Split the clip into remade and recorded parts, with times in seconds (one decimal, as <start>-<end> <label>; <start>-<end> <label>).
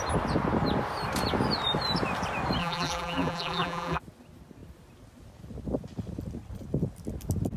0.0-2.6 recorded; 2.6-4.0 remade; 4.0-7.6 recorded